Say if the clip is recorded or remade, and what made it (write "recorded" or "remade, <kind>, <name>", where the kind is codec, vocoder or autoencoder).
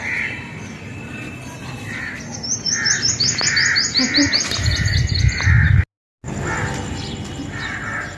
recorded